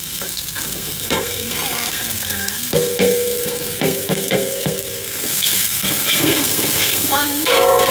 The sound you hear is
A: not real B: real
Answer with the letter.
A